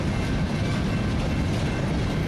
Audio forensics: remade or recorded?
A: recorded